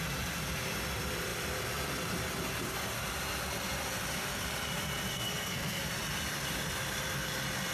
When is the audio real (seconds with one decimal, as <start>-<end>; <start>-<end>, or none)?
0.0-5.1; 5.9-7.7